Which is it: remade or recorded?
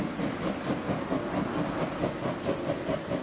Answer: recorded